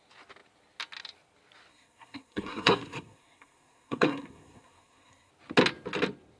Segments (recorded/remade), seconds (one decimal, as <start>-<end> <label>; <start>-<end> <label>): 0.0-1.7 recorded; 1.7-5.3 remade; 5.3-6.4 recorded